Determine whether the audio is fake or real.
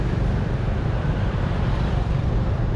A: fake